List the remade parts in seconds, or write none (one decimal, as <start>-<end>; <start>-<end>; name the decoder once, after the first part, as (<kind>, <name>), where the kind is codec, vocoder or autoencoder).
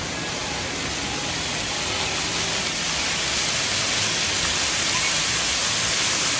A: none